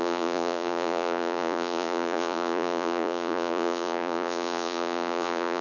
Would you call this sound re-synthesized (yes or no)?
yes